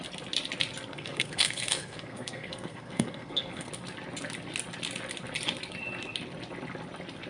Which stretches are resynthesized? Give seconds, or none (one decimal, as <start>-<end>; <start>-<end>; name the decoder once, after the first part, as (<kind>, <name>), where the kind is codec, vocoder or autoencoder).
0.9-3.7 (codec, SNAC)